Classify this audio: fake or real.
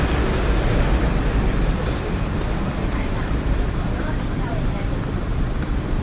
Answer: fake